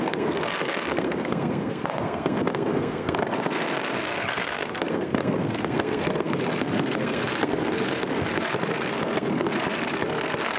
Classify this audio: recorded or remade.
remade